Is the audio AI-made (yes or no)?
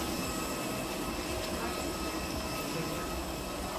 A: no